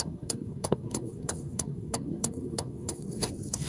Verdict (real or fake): fake